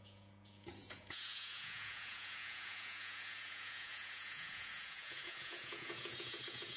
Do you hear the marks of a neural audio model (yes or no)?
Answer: yes